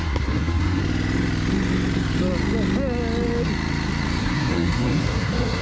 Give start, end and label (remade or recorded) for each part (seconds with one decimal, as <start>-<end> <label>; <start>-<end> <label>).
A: 0.0-0.8 remade; 0.8-4.2 recorded; 4.2-5.6 remade